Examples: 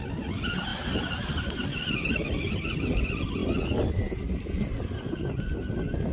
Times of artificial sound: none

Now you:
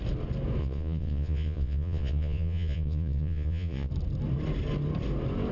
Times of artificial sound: 0.6-3.9 (vocoder, Vocos)

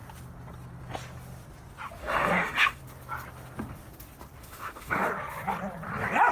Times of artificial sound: 2.0-2.8 (autoencoder, DAC-VAE); 4.4-5.1

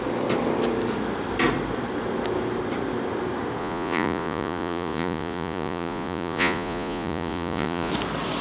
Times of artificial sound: 3.6-7.9 (vocoder, Vocos)

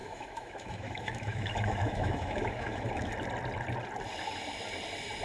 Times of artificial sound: 0.0-3.1 (autoencoder, DAC-VAE)

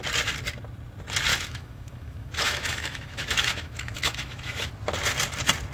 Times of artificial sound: 1.3-4.7 (autoencoder, DAC-VAE)